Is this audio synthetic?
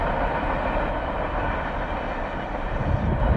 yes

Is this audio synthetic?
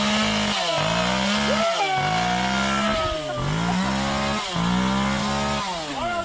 no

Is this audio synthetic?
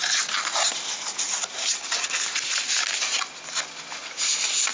no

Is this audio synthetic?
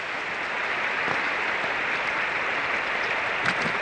no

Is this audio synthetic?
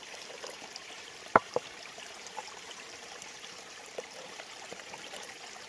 yes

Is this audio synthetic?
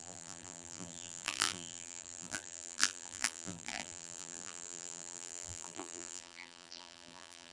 yes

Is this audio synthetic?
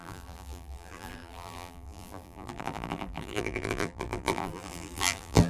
yes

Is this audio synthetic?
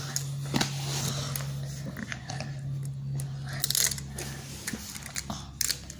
no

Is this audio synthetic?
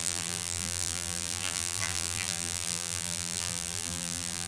yes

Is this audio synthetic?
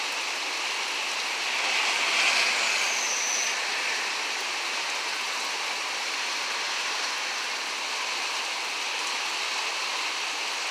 no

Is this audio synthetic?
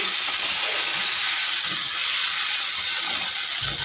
yes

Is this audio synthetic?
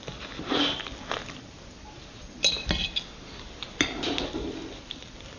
no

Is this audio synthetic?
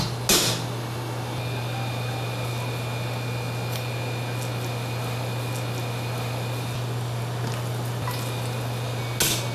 no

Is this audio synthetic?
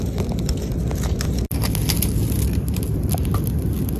no